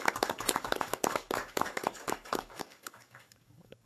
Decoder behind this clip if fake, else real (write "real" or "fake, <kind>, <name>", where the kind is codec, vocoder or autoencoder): fake, codec, DAC